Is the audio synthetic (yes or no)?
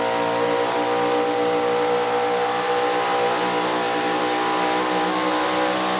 no